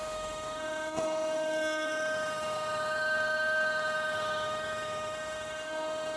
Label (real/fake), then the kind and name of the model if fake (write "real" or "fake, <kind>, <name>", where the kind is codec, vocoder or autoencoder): fake, autoencoder, DAC-VAE